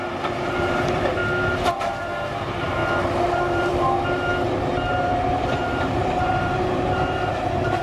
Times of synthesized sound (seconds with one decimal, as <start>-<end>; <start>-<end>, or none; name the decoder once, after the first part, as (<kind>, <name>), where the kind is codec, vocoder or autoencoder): 0.0-1.2 (vocoder, BigVGAN v2); 1.7-2.8; 3.3-7.8